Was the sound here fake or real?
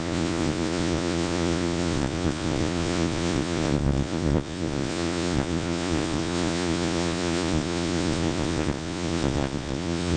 fake